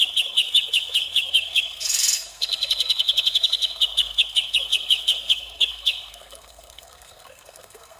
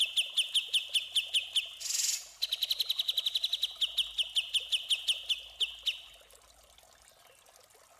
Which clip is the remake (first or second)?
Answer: first